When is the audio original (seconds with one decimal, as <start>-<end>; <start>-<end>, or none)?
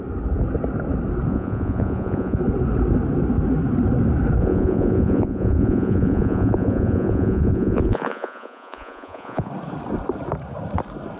0.0-1.3; 2.4-4.4; 9.5-11.2